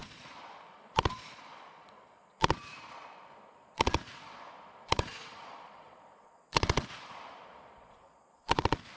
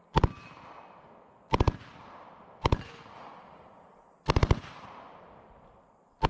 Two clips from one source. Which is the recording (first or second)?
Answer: second